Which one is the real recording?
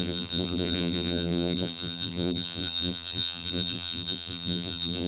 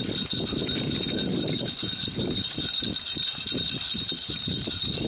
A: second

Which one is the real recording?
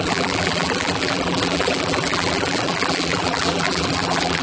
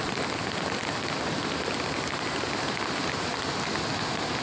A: second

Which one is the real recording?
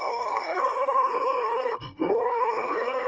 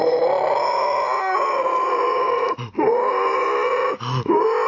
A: second